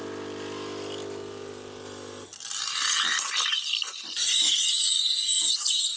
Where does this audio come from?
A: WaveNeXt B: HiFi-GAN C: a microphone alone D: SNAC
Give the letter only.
C